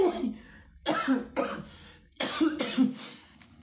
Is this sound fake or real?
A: real